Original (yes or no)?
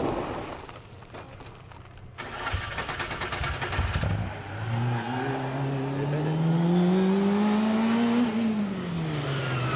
yes